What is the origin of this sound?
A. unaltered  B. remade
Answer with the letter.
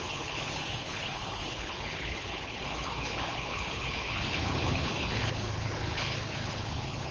B